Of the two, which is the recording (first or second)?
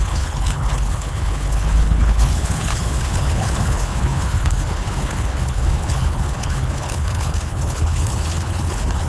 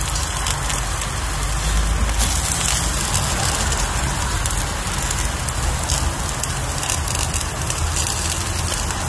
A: second